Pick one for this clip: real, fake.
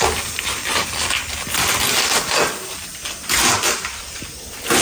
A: real